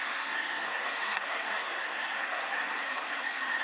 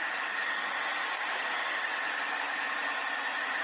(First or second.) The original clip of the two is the second